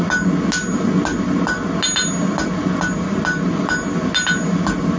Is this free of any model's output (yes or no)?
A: yes